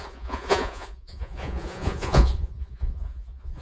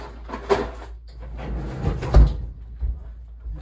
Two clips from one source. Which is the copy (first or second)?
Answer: first